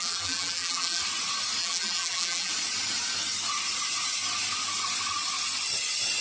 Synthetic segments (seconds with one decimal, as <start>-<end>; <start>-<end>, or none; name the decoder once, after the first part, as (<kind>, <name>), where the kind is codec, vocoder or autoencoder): 0.0-1.0 (vocoder, BigVGAN v2); 1.6-2.5